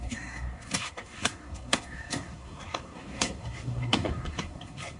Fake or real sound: fake